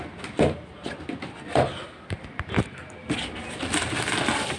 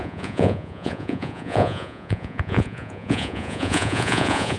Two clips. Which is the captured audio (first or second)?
first